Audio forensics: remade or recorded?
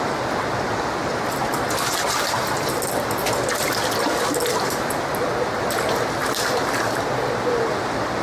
recorded